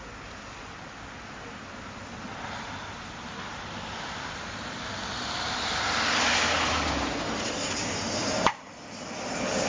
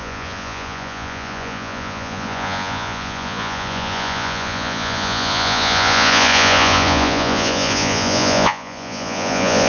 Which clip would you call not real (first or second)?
second